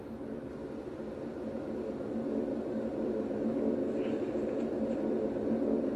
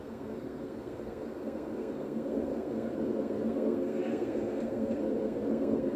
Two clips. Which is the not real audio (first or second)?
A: second